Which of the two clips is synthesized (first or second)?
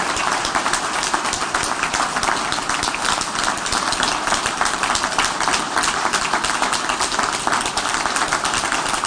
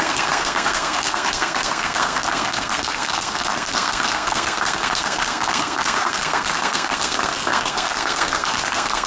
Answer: second